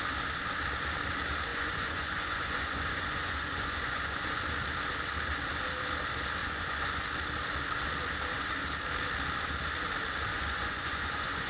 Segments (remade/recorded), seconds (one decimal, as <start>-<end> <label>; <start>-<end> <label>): 0.0-1.5 recorded; 1.5-4.4 remade; 4.4-6.4 recorded; 6.4-7.0 remade; 7.0-10.3 recorded; 10.3-11.5 remade